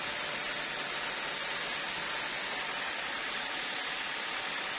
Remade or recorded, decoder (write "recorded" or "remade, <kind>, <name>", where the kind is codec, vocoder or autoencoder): recorded